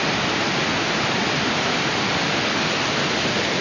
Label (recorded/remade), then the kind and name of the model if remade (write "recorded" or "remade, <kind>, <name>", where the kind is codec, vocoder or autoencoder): recorded